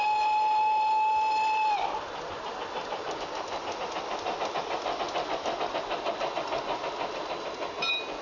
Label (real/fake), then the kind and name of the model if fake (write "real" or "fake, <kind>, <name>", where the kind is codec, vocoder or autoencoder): real